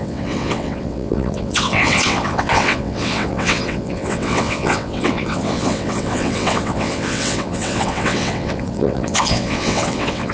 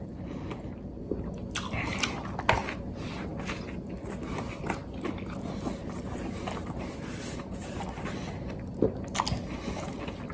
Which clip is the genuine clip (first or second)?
second